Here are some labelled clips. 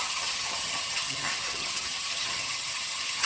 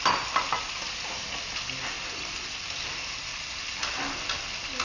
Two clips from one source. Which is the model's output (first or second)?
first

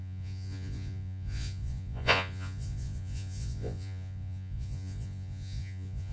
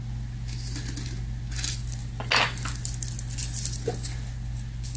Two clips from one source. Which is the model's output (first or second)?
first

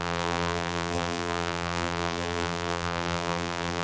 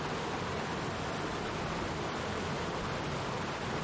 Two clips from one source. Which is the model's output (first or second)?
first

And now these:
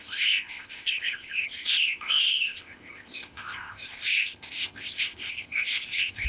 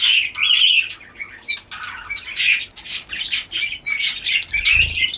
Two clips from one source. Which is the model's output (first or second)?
first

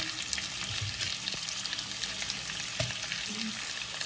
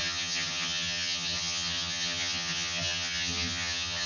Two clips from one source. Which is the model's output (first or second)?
second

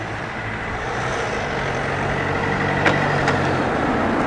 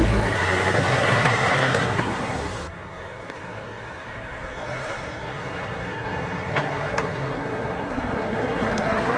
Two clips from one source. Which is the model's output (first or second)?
second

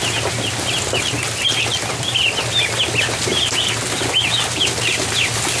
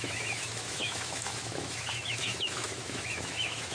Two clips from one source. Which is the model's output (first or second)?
second